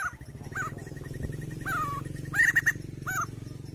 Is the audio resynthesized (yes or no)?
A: no